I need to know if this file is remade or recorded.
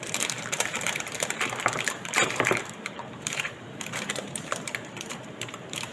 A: remade